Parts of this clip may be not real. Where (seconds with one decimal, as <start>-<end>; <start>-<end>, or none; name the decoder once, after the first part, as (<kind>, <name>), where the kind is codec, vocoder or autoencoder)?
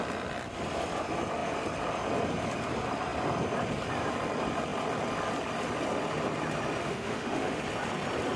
6.8-7.6 (autoencoder, DAC-VAE)